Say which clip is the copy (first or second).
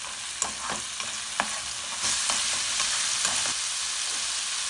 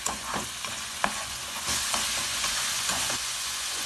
second